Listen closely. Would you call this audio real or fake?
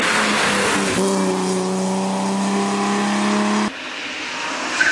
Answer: real